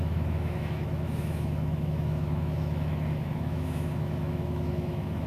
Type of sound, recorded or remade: remade